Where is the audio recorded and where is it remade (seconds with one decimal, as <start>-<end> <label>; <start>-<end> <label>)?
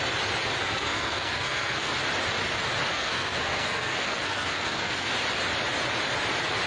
0.0-0.6 recorded; 0.6-1.9 remade; 1.9-2.9 recorded; 2.9-5.1 remade; 5.1-6.7 recorded